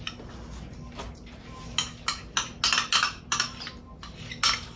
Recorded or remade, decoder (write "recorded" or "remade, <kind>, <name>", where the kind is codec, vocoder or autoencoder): recorded